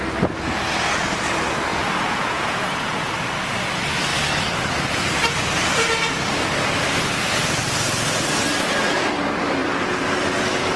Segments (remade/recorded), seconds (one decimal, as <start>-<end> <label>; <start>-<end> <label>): 0.0-1.7 recorded; 1.7-3.1 remade; 3.1-10.8 recorded